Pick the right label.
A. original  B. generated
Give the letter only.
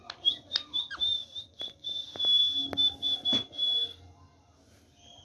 A